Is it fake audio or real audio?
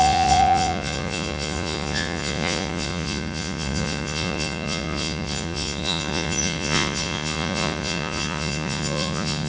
fake